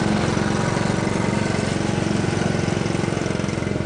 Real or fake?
real